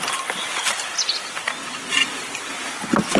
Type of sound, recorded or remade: recorded